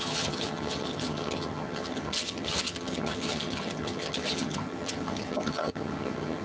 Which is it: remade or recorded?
remade